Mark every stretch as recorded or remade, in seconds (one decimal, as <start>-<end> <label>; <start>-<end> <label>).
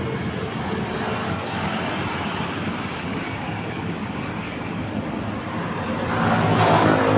0.0-1.2 recorded; 1.2-1.9 remade; 1.9-2.6 recorded; 2.6-5.2 remade; 5.2-7.2 recorded